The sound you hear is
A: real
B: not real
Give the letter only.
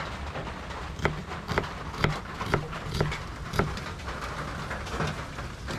A